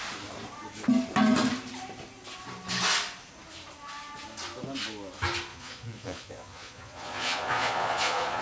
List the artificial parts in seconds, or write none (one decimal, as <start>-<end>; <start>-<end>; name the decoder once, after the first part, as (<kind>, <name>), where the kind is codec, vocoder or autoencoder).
5.5-8.4 (vocoder, Vocos)

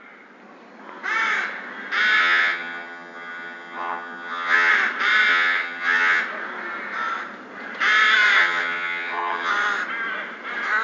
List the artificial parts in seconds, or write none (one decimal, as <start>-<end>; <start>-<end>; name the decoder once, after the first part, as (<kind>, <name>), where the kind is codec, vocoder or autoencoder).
2.2-4.7 (vocoder, HiFi-GAN); 5.3-6.2; 8.4-9.5

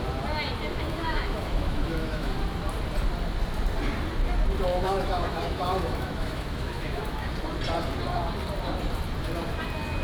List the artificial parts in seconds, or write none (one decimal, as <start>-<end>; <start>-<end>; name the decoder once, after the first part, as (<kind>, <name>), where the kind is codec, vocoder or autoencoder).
0.7-2.3 (autoencoder, DAC-VAE); 4.7-7.3